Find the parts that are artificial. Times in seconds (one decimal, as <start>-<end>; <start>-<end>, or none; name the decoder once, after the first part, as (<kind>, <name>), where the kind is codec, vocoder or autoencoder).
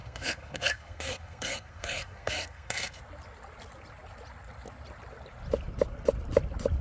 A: 0.0-3.0 (codec, SNAC)